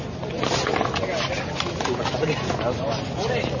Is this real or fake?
real